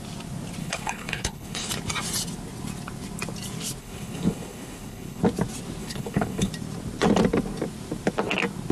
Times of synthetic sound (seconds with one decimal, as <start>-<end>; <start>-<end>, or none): 0.6-1.7; 3.8-5.2; 5.8-6.5